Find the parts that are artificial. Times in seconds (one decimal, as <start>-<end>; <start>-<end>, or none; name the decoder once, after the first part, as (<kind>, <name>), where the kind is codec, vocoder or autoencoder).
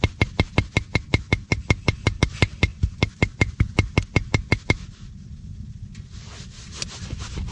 none